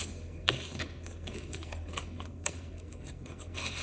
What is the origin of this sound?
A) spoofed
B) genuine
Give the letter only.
A